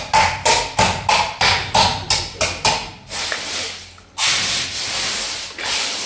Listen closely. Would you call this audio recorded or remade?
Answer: recorded